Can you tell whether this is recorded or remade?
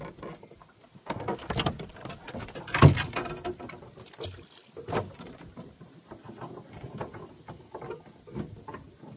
recorded